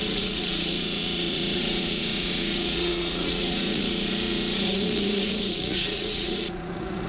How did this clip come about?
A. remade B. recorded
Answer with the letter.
A